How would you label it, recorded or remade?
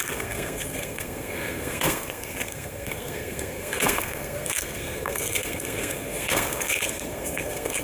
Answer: remade